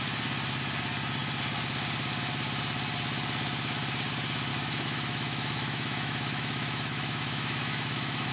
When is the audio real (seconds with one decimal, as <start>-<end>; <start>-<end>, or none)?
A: 0.0-4.5